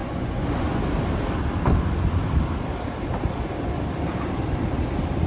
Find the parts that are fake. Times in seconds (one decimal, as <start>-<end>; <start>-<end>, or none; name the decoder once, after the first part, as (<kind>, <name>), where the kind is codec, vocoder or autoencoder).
0.0-0.8 (vocoder, Vocos)